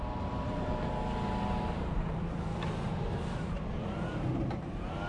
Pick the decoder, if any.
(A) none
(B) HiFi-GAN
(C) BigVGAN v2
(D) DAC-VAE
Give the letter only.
C